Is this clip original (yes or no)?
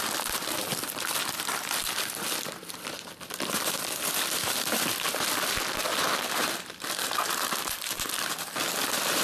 no